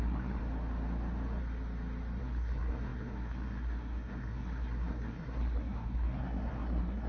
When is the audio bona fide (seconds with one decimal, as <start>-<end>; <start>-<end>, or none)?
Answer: 0.4-2.2